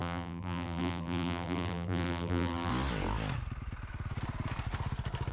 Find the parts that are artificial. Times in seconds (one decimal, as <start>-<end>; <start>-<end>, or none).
0.0-2.7